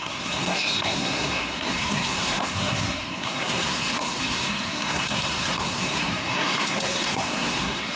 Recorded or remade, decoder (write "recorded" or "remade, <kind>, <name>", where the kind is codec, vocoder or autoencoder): remade, codec, SNAC